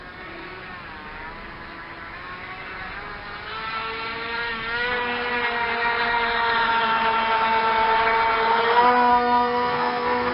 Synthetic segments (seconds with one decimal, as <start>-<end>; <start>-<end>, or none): 9.1-10.3